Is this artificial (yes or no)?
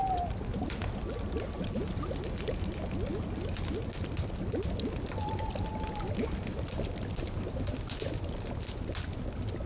no